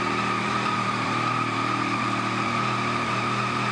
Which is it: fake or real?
fake